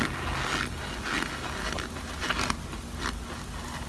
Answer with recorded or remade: recorded